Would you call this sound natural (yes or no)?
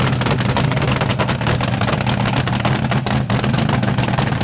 yes